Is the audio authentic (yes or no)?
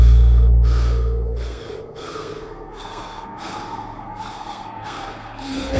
no